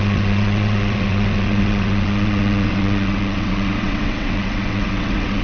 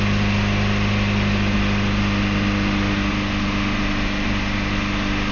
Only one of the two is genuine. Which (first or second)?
second